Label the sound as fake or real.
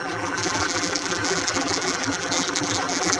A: fake